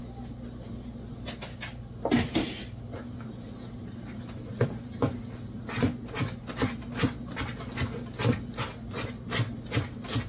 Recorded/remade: recorded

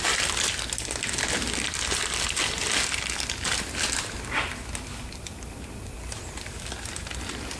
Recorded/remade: recorded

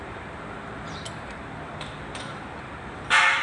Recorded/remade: remade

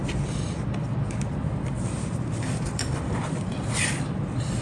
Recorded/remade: remade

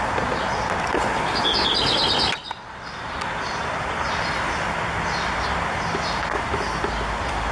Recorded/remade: recorded